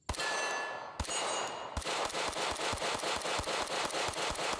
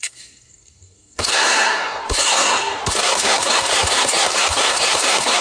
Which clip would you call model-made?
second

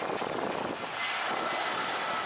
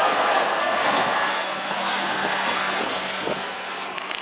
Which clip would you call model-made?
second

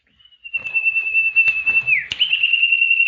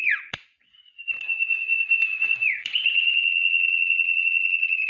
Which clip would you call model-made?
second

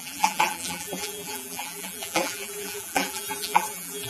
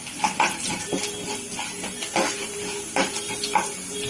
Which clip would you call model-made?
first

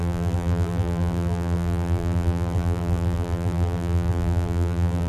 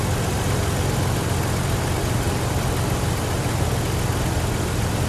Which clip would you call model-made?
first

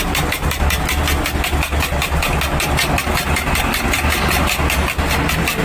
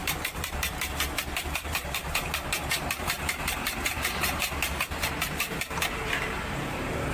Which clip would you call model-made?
second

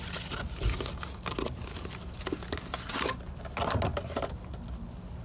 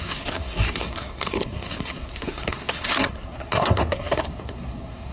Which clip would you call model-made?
second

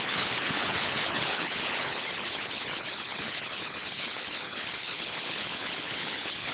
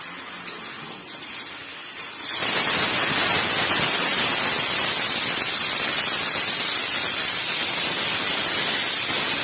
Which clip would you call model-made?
first